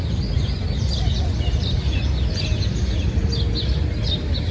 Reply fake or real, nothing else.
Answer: real